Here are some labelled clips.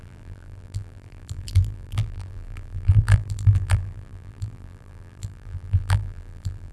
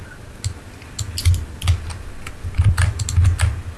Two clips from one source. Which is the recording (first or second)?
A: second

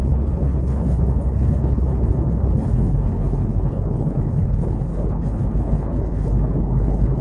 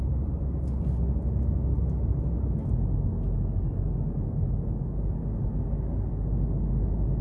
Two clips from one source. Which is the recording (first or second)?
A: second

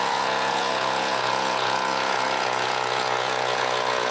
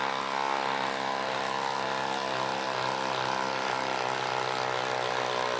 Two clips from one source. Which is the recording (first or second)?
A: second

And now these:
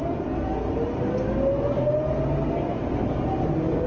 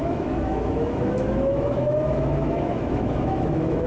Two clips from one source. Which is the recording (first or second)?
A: first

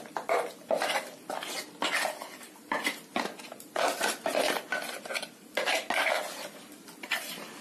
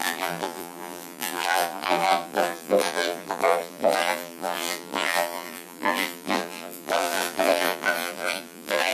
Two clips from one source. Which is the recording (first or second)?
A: first